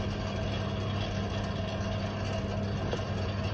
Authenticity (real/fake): real